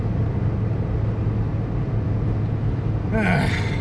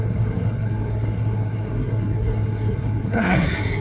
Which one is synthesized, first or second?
second